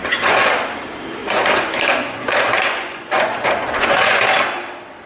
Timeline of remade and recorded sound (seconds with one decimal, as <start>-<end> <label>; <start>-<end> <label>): 0.0-0.5 remade; 0.5-1.2 recorded; 1.2-4.2 remade; 4.2-5.1 recorded

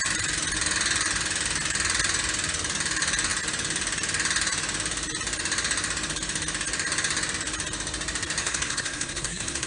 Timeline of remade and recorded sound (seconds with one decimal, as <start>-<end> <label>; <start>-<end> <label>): 0.0-8.4 recorded; 8.4-9.7 remade

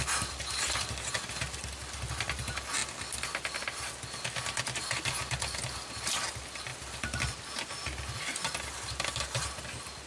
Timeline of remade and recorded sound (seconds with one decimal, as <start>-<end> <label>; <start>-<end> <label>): 0.0-10.1 recorded